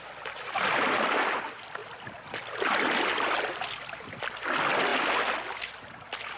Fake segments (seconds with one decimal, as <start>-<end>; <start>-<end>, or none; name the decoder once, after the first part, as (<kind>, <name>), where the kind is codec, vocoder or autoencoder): none